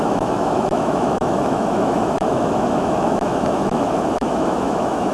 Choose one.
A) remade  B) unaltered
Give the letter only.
A